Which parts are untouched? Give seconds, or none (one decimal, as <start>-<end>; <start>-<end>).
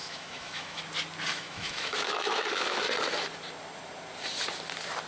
0.8-1.3; 2.8-5.1